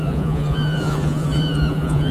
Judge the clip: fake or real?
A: fake